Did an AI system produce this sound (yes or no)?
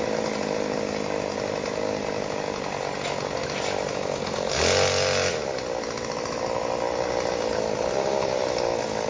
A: no